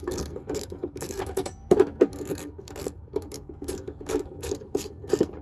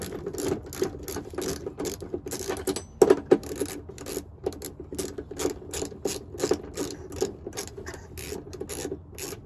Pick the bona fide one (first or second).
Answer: second